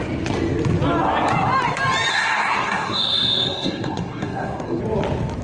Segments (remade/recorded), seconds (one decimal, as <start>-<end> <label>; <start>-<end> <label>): 0.0-2.1 recorded; 2.1-4.8 remade; 4.8-5.4 recorded